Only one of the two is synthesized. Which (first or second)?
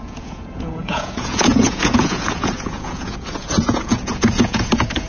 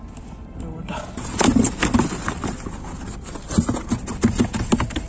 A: first